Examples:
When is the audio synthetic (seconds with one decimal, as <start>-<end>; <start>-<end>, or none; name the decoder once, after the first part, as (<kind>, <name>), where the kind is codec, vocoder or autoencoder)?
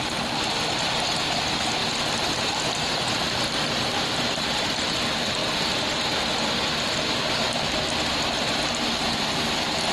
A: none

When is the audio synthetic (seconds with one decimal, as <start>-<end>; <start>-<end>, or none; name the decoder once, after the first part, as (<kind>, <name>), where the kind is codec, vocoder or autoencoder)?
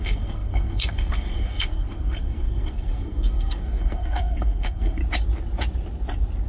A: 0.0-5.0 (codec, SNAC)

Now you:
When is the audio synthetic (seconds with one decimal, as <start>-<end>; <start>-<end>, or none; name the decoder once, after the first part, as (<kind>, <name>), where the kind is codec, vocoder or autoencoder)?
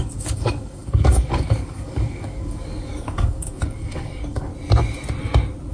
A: 0.0-4.5 (codec, DAC)